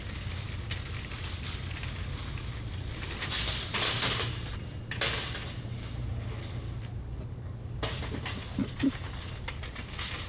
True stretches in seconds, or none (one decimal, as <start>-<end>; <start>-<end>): 0.0-8.6; 9.5-10.3